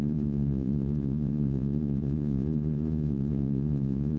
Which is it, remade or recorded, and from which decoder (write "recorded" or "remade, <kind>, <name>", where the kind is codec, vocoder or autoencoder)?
remade, vocoder, Vocos